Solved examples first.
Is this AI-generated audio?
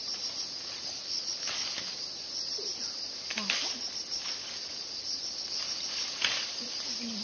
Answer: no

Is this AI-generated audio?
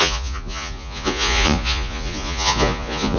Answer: yes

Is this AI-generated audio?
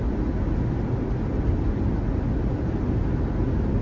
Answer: no